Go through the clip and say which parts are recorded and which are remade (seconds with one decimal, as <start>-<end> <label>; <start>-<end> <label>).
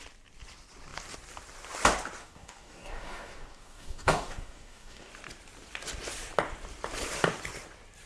0.0-2.2 recorded; 2.2-5.1 remade; 5.1-8.1 recorded